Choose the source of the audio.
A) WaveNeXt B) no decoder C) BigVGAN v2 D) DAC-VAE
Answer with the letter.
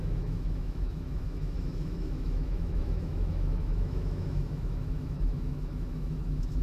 D